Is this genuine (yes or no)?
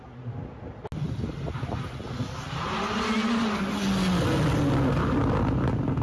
yes